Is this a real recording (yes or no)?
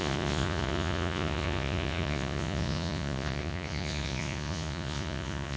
no